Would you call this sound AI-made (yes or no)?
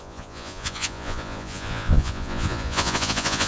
yes